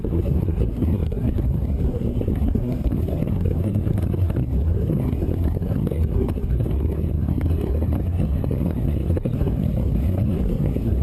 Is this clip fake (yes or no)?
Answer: yes